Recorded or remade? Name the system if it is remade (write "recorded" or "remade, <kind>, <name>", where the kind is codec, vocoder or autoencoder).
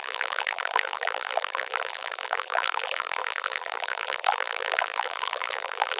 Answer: remade, vocoder, BigVGAN v2